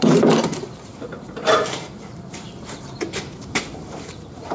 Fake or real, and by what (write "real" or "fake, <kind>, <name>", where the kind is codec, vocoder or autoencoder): fake, vocoder, BigVGAN v2